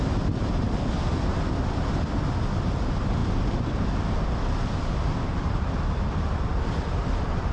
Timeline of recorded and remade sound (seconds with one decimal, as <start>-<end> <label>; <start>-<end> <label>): 0.0-7.5 recorded